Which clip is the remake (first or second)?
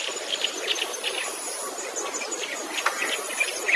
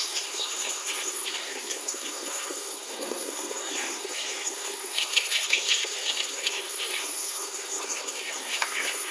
second